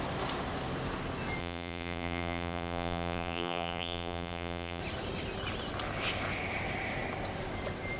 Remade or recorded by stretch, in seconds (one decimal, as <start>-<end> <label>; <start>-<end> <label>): 0.0-1.4 recorded; 1.4-4.8 remade; 4.8-8.0 recorded